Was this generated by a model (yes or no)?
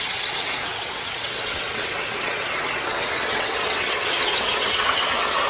yes